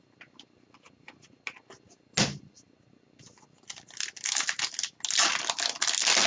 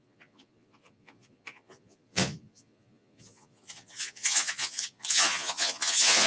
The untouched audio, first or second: first